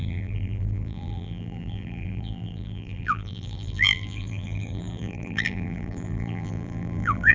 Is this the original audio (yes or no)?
no